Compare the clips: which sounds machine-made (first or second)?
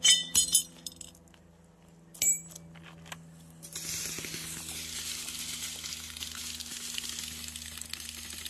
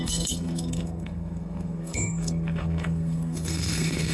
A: second